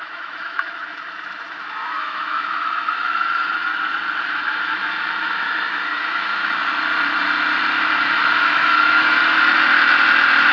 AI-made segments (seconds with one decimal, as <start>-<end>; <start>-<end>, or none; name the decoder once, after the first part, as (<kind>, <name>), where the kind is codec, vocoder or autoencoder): 0.0-3.7 (autoencoder, DAC-VAE); 4.2-6.6; 8.0-9.2